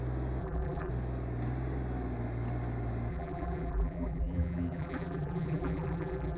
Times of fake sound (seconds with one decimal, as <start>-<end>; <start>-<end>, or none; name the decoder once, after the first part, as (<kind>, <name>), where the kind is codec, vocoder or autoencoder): 0.4-0.9 (vocoder, BigVGAN v2); 3.1-6.4